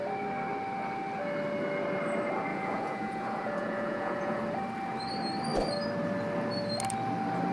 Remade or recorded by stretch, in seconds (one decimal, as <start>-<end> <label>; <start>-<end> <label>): 0.0-2.5 recorded; 2.5-4.4 remade; 4.4-7.5 recorded